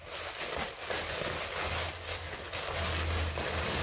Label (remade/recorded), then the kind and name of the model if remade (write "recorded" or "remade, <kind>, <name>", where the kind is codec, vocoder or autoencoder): recorded